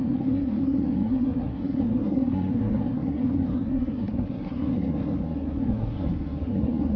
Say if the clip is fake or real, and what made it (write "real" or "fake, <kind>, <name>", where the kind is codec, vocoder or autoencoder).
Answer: fake, codec, SNAC